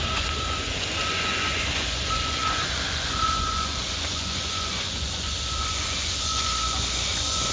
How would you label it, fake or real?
fake